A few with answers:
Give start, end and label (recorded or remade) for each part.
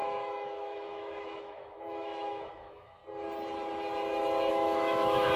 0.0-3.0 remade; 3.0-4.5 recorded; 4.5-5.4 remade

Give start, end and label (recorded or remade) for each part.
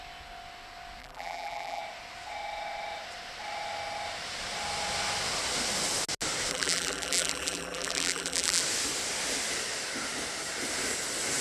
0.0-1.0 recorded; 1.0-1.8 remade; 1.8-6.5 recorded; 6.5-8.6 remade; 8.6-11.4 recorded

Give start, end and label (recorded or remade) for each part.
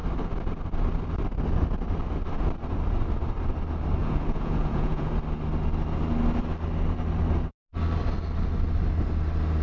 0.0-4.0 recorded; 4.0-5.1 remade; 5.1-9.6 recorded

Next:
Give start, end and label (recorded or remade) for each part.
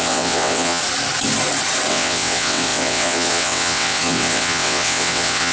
0.0-0.8 remade; 0.8-1.9 recorded; 1.9-5.5 remade